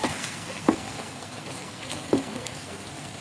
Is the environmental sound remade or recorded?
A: remade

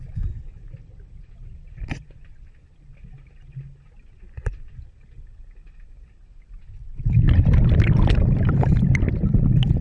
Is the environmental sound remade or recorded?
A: recorded